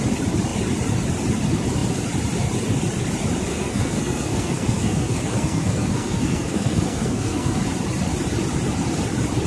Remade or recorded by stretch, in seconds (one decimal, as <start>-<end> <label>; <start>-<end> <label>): 0.0-3.5 recorded; 3.5-7.6 remade; 7.6-9.5 recorded